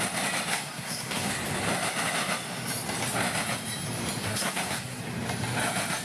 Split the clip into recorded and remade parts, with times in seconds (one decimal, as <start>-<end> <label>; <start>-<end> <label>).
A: 0.0-0.5 recorded; 0.5-1.3 remade; 1.3-4.2 recorded; 4.2-5.0 remade; 5.0-6.0 recorded